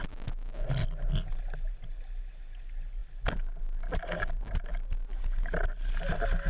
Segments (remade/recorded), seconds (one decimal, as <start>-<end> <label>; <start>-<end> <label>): 0.0-6.5 recorded